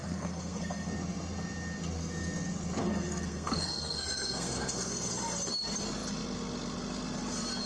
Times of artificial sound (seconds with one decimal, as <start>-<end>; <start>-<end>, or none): 0.0-0.9; 2.8-5.1